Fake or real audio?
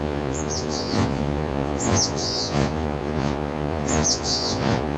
fake